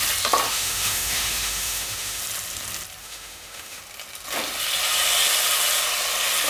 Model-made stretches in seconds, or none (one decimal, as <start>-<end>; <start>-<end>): 0.5-2.2; 3.0-3.8